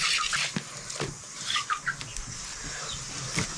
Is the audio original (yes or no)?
yes